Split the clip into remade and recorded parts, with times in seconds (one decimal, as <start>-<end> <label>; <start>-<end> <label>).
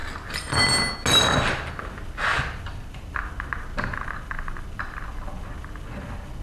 0.0-6.4 recorded